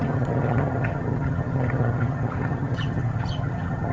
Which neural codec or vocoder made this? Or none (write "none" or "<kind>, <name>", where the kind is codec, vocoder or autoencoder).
vocoder, HiFi-GAN